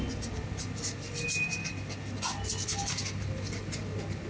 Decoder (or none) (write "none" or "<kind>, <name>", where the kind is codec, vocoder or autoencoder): none